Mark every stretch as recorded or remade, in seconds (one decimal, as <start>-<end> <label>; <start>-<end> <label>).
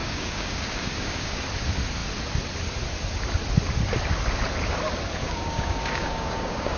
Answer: 0.0-1.4 remade; 1.4-5.2 recorded; 5.2-6.8 remade